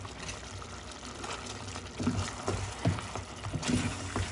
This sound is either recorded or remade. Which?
recorded